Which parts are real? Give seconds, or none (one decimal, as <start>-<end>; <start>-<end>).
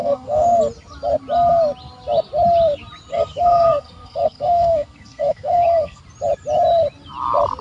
0.6-3.1; 6.0-7.6